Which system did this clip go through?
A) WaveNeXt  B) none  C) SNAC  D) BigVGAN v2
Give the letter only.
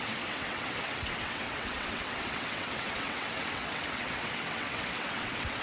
A